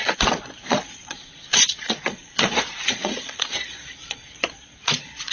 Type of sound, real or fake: fake